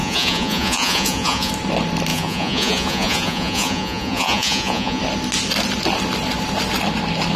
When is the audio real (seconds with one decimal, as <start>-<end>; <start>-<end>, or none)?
1.5-2.1; 5.0-7.4